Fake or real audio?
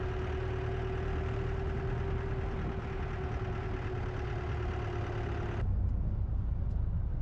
real